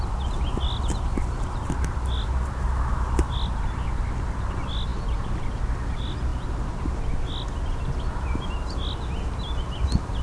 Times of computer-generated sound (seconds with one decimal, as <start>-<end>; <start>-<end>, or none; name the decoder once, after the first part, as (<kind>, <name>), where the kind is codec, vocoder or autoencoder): none